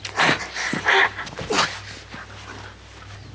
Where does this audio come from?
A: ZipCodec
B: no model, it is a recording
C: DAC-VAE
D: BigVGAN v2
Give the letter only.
B